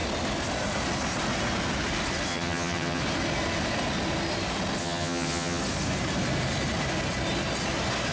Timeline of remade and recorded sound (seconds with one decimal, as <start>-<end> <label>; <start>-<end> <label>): 0.0-2.3 recorded; 2.3-3.0 remade; 3.0-4.8 recorded; 4.8-5.6 remade; 5.6-8.1 recorded